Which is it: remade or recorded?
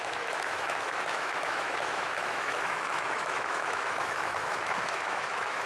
remade